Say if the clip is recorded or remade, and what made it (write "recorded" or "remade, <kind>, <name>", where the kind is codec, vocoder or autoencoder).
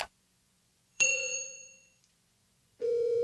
remade, vocoder, Vocos